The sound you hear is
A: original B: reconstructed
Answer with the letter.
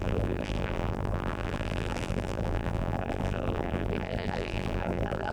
B